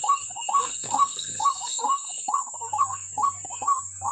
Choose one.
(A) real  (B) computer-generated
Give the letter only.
B